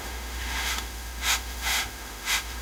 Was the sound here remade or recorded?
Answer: remade